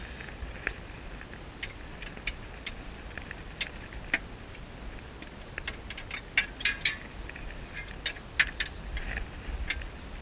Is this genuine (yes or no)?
yes